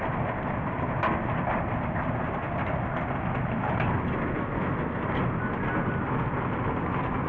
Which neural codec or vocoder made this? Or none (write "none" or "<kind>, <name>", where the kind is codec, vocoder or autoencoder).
none